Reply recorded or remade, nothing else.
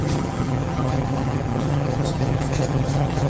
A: remade